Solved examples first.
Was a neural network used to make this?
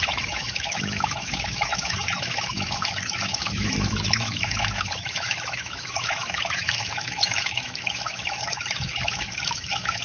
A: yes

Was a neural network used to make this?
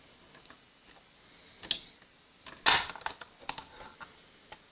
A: no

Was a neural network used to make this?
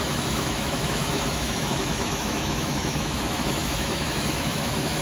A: yes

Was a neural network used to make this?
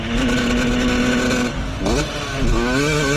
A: no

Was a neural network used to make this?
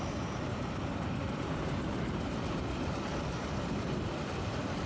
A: no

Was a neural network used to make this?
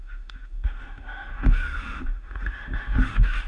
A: yes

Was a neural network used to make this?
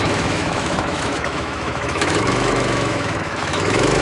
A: yes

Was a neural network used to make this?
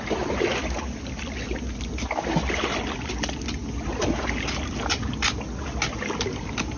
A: no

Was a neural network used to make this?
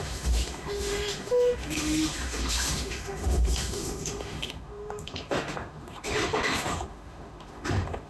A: yes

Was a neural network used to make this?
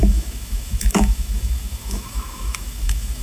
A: yes